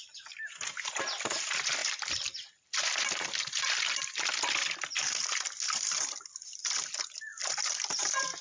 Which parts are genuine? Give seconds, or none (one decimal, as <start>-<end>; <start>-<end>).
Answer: 0.0-8.4